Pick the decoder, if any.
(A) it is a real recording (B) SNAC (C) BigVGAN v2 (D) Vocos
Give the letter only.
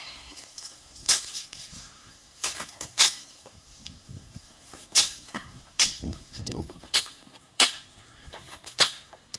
B